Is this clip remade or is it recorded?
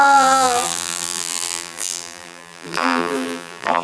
remade